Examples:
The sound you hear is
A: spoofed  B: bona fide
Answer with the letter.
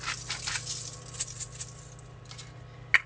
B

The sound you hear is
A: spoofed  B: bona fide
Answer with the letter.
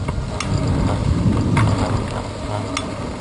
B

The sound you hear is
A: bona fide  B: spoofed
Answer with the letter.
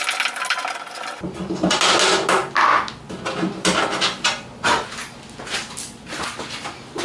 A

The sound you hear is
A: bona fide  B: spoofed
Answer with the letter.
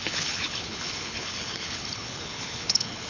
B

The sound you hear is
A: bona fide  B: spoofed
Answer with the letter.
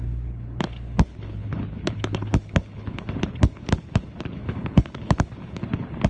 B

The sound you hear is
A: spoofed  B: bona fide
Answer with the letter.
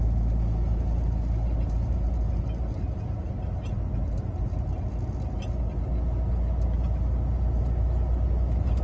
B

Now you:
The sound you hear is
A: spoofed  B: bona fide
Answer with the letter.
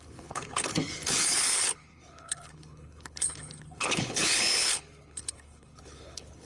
A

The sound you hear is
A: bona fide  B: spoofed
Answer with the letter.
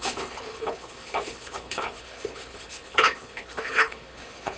B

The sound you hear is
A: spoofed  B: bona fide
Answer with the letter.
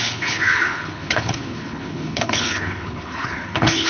A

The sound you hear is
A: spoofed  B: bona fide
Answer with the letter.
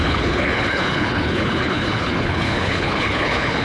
A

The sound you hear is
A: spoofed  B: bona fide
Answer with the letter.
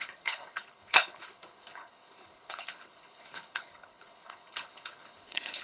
A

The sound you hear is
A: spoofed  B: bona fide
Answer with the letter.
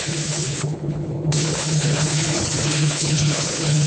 A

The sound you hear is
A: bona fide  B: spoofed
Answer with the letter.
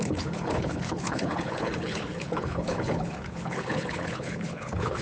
B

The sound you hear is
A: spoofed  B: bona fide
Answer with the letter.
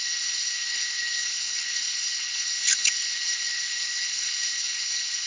A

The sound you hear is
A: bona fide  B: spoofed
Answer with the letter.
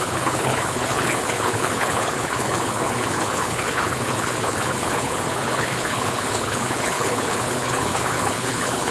B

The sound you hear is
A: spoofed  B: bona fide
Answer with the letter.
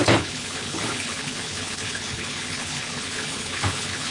A